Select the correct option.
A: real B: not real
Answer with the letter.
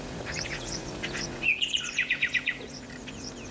B